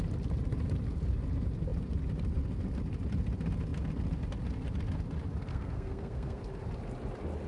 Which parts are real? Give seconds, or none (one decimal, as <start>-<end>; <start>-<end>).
0.0-5.5; 6.4-7.5